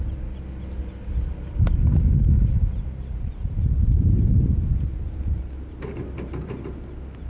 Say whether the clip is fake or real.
real